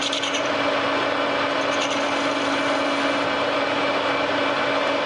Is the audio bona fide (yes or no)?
yes